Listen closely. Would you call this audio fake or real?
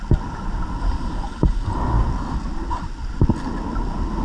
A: real